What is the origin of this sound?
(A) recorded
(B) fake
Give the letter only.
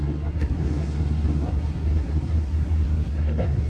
B